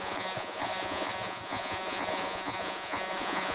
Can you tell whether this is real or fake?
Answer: fake